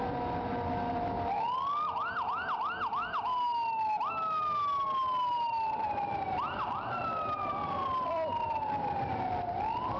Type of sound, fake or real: real